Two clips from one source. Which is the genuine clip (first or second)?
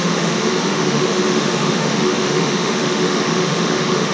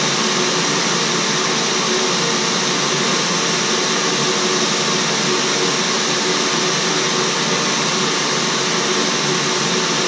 second